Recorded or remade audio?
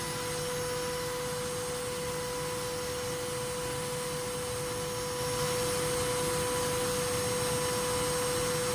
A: recorded